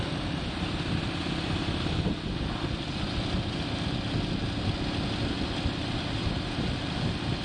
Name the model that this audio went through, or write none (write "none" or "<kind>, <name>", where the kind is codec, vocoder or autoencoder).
none